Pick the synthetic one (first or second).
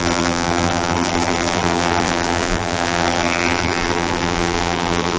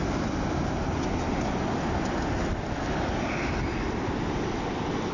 first